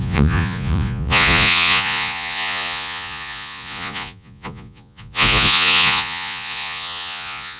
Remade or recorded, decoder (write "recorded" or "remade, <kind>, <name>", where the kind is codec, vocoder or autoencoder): remade, vocoder, Vocos